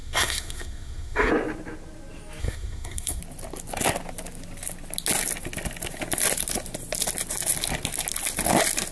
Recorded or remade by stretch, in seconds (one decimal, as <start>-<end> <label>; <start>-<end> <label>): 0.0-1.3 remade; 1.3-2.4 recorded; 2.4-3.2 remade; 3.2-8.9 recorded